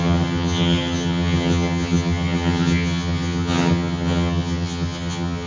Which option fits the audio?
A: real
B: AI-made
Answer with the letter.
B